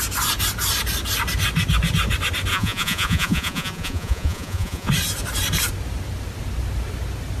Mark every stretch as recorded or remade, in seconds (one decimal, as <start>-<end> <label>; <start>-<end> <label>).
0.0-2.5 recorded; 2.5-4.9 remade; 4.9-7.4 recorded